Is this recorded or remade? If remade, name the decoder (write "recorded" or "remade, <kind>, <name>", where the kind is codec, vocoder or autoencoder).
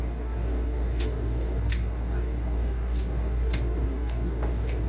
remade, codec, DAC